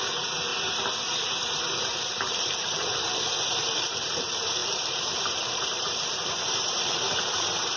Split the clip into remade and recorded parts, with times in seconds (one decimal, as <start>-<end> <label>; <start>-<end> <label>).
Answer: 0.0-0.5 remade; 0.5-1.3 recorded; 1.3-7.8 remade